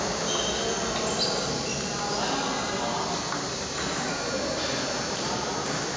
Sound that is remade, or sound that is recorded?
recorded